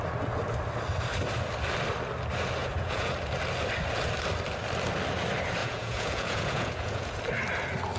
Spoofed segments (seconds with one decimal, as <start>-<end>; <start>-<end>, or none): 2.6-3.1; 5.6-7.2